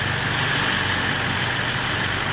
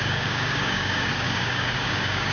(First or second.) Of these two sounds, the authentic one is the first